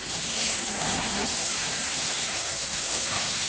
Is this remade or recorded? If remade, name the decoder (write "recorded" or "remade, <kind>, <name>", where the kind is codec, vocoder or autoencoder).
remade, codec, SNAC